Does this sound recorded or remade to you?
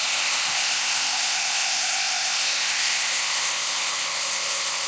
remade